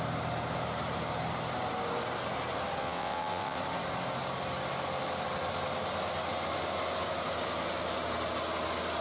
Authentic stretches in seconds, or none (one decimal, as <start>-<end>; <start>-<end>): 0.0-2.8; 3.6-9.0